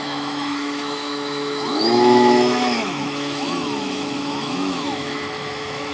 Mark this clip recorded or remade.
remade